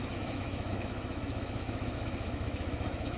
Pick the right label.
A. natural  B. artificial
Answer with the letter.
B